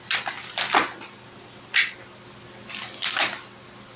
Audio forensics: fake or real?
real